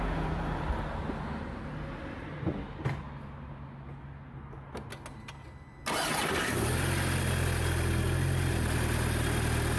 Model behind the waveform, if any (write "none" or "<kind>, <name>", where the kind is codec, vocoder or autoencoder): none